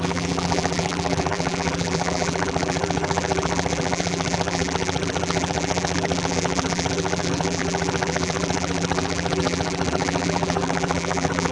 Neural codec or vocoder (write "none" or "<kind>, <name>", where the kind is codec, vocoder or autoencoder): vocoder, BigVGAN v2